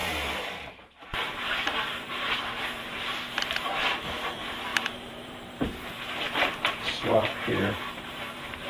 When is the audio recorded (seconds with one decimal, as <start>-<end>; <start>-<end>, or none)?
none